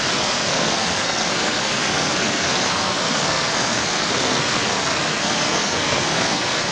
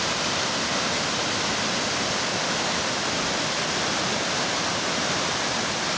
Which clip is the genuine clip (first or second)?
second